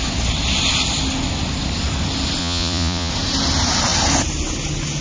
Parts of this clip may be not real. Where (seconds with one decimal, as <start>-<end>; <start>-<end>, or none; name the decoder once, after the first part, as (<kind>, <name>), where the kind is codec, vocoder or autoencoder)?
2.4-3.1 (vocoder, Vocos)